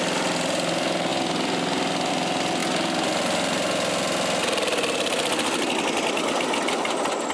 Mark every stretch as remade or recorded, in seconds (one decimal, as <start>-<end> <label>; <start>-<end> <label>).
0.0-7.3 recorded

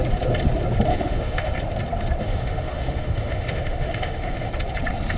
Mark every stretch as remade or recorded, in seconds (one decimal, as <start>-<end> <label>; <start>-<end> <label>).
0.0-0.9 recorded; 0.9-1.5 remade; 1.5-2.2 recorded; 2.2-4.5 remade; 4.5-5.2 recorded